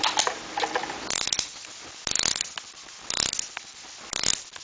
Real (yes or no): yes